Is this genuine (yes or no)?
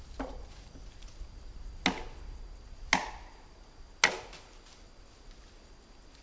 yes